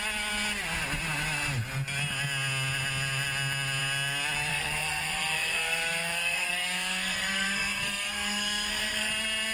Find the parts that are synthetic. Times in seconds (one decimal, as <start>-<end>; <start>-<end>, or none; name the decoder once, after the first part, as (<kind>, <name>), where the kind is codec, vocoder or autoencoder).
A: 4.5-9.1 (codec, SNAC)